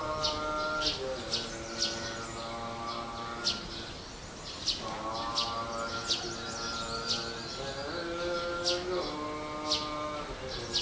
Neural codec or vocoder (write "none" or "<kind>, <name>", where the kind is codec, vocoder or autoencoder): none